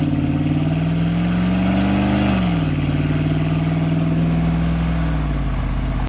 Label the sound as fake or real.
real